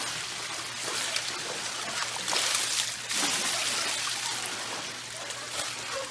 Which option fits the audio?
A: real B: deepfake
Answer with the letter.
A